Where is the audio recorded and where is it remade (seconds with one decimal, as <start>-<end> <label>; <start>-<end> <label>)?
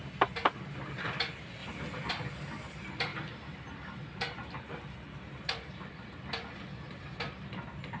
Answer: 0.0-8.0 recorded